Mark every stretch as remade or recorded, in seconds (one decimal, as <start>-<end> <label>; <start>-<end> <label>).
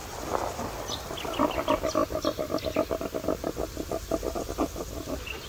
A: 0.0-5.5 recorded